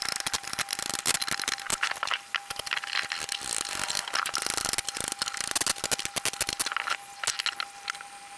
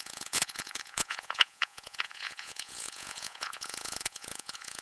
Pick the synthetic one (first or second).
second